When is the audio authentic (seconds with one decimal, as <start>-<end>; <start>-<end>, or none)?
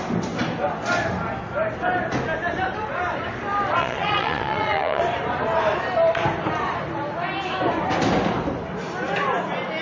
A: 0.0-3.8; 5.0-9.8